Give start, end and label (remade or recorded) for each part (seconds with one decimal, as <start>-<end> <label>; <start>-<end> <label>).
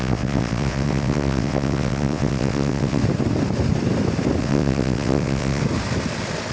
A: 0.0-3.0 remade; 3.0-4.4 recorded; 4.4-5.6 remade; 5.6-6.5 recorded